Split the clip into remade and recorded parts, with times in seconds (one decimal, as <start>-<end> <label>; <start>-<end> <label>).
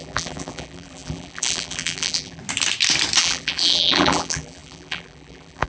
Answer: 0.0-2.4 remade; 2.4-3.2 recorded; 3.2-5.7 remade